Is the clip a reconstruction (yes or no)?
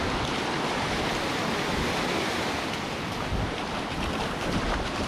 yes